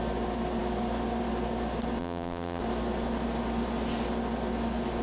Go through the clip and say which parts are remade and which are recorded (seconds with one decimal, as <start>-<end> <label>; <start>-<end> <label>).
0.0-2.0 recorded; 2.0-2.6 remade; 2.6-5.0 recorded